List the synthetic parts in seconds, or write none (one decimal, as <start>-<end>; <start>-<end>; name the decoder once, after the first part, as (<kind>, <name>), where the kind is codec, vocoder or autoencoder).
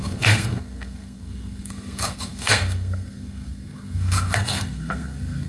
0.0-5.5 (codec, SNAC)